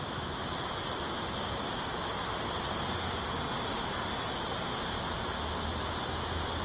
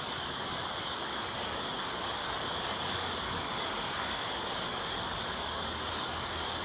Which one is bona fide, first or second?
first